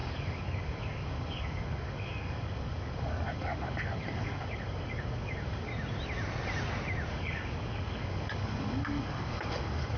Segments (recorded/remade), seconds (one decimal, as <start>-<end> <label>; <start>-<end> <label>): 0.0-5.7 remade; 5.7-7.1 recorded; 7.1-10.0 remade